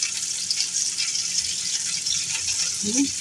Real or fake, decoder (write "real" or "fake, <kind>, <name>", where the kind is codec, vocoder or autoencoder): fake, vocoder, BigVGAN v2